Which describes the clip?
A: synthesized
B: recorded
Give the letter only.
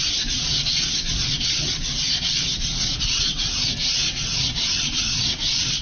A